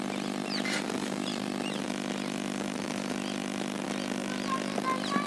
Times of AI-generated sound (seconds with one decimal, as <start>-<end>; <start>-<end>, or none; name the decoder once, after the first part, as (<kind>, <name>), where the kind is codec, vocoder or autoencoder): 1.0-1.5 (vocoder, BigVGAN v2)